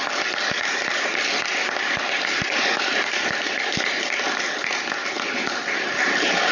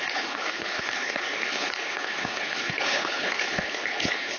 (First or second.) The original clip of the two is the first